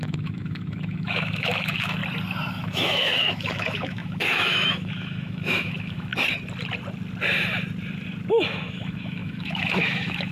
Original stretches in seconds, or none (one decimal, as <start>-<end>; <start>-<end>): 2.0-2.5; 6.1-8.3